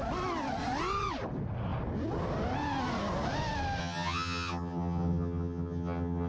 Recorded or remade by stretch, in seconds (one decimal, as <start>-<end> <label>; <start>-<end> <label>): 0.0-3.8 recorded; 3.8-6.3 remade